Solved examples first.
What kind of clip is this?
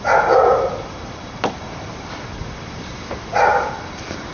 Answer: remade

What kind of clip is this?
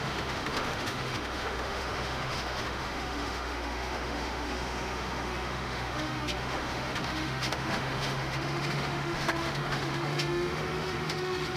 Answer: remade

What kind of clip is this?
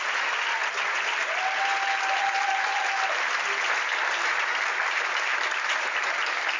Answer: recorded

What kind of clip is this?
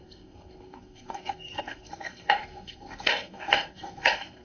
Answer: remade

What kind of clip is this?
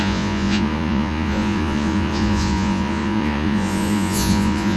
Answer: remade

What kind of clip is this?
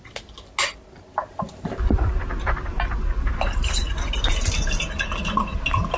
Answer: recorded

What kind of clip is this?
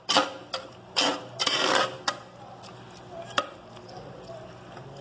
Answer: recorded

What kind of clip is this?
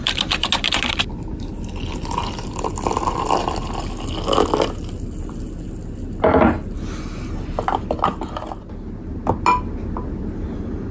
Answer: recorded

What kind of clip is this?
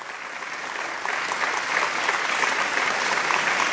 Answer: recorded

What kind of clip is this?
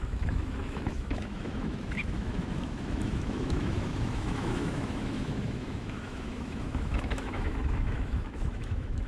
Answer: remade